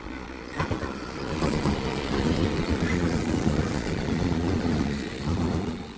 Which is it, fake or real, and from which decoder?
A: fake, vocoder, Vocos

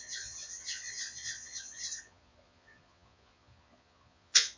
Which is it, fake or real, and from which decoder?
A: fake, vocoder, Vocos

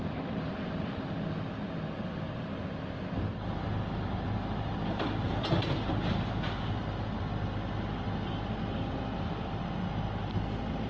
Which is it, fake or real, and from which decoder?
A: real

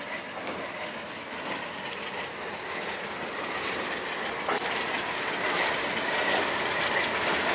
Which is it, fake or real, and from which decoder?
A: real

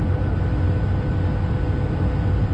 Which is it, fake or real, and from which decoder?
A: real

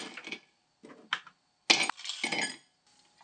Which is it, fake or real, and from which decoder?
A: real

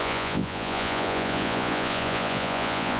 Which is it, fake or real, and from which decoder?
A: fake, vocoder, Vocos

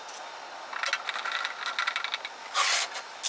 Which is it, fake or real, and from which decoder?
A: real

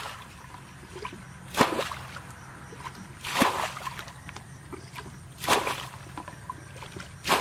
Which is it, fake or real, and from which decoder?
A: real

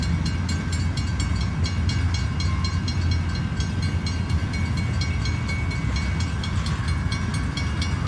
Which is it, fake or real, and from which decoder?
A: real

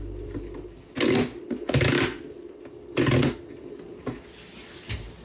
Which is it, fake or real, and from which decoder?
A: real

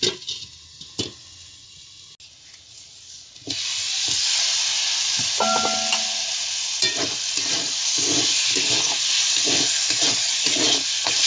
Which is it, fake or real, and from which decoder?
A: real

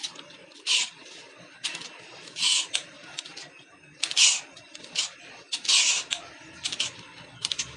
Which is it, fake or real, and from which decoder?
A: real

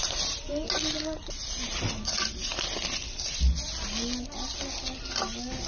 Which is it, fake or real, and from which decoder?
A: real